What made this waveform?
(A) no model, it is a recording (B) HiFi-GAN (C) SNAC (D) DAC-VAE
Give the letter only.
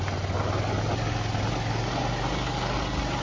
A